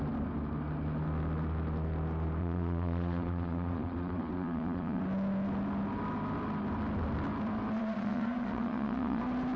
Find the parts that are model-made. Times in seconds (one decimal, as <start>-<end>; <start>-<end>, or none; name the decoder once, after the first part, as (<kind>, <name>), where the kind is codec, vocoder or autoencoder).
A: 2.4-5.0 (vocoder, Vocos); 7.8-9.2